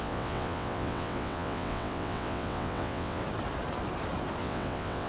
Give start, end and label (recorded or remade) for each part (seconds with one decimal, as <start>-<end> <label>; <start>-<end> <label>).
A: 0.0-3.2 remade; 3.2-4.4 recorded; 4.4-5.1 remade